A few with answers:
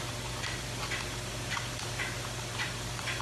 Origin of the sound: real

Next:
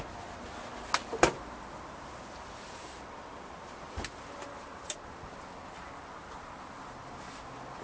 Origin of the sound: real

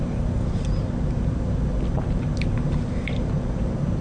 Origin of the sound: real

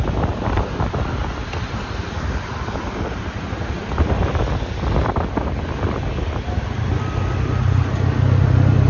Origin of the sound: real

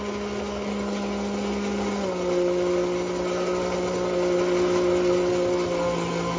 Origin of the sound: real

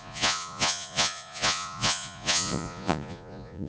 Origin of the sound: fake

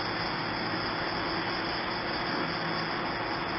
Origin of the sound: real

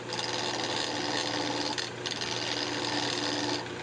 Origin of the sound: real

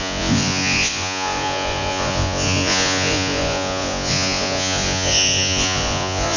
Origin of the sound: fake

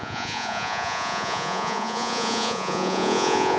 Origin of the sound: fake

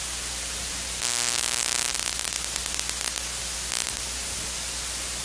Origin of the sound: real